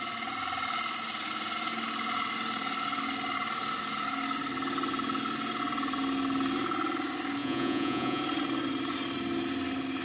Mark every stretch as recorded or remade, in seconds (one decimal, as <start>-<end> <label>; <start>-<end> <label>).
0.0-7.4 recorded; 7.4-8.2 remade; 8.2-10.0 recorded